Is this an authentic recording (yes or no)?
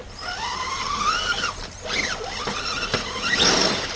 yes